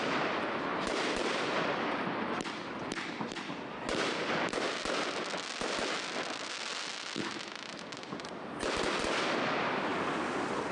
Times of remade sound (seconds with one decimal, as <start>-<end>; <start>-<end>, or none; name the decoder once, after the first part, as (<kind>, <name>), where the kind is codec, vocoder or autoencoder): none